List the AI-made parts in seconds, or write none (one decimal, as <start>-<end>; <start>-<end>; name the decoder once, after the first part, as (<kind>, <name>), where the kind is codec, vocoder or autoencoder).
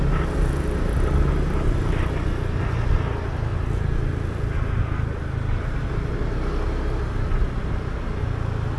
none